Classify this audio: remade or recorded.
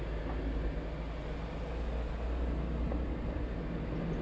recorded